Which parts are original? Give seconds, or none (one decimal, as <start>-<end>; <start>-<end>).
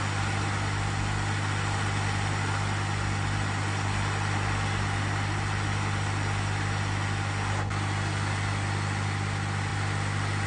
0.0-10.5